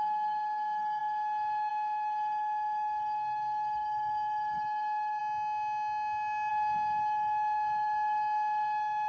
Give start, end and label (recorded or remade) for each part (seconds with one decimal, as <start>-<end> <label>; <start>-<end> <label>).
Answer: 0.0-5.2 remade; 5.2-6.5 recorded; 6.5-9.1 remade

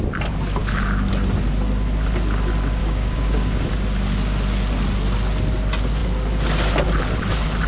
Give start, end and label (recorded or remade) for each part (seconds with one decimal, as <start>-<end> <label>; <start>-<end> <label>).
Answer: 0.0-2.8 recorded; 2.8-3.7 remade; 3.7-7.7 recorded